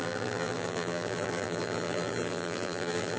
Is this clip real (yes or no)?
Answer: no